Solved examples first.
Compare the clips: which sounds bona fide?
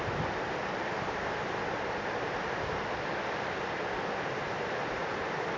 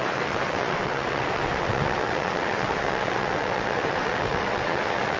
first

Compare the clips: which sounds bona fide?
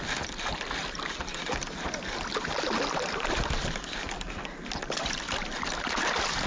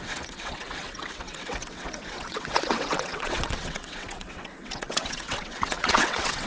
first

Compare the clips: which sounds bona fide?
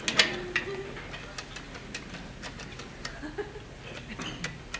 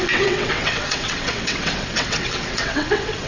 first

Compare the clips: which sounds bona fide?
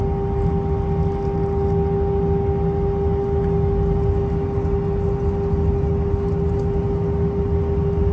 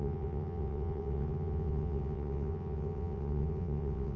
first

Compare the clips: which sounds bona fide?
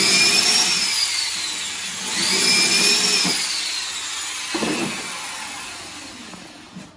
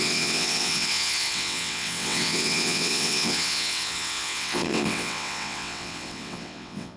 first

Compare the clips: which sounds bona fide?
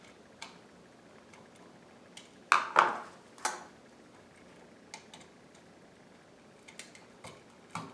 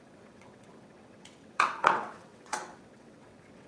first